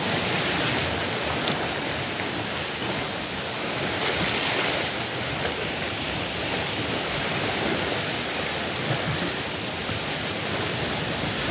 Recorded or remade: recorded